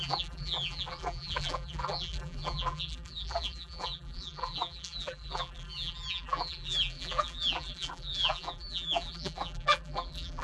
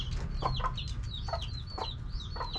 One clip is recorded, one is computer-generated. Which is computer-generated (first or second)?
first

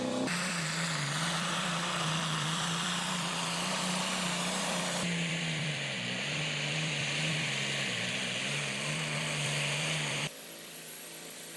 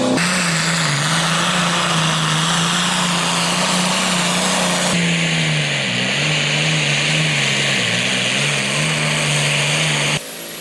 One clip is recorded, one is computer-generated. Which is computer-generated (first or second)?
first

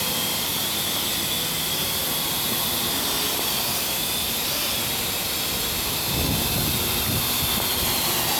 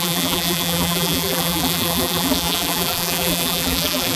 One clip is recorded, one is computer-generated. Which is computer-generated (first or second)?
second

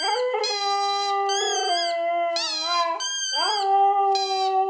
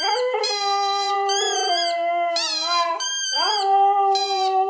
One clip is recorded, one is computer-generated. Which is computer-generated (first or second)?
second